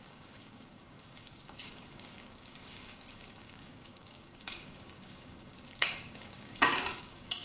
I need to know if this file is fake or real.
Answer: fake